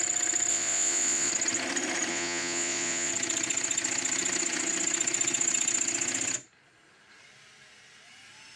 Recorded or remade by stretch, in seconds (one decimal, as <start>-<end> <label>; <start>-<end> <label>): 0.0-0.5 recorded; 0.5-1.3 remade; 1.3-2.1 recorded; 2.1-3.1 remade; 3.1-8.6 recorded